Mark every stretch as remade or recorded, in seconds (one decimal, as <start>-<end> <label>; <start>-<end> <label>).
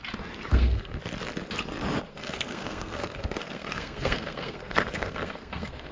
0.0-0.5 recorded; 0.5-1.0 remade; 1.0-2.1 recorded; 2.1-5.9 remade